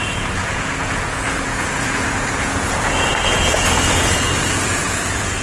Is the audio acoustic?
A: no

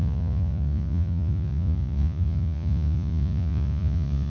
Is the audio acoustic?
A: no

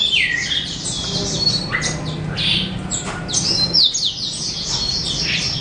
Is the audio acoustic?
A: yes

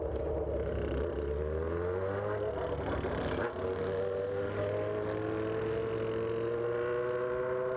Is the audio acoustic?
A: yes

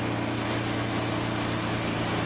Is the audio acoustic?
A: yes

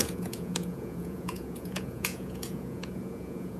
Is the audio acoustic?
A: no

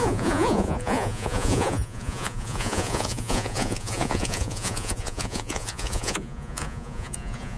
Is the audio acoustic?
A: no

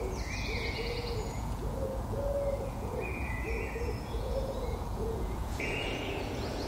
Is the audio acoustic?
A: no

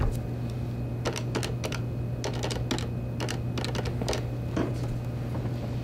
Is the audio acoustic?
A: yes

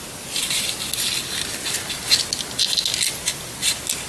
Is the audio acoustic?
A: yes